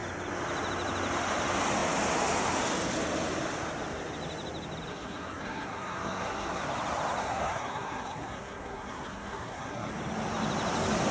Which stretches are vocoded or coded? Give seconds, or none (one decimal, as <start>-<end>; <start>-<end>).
4.9-6.6; 7.2-9.9